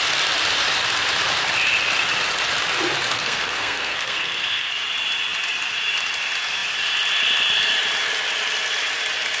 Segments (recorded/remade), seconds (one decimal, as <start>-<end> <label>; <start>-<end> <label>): 0.0-3.2 recorded; 3.2-4.7 remade; 4.7-9.4 recorded